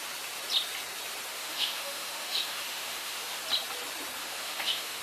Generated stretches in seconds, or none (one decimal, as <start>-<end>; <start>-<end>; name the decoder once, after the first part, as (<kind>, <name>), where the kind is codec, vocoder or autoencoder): 1.3-3.4 (autoencoder, DAC-VAE); 4.2-5.0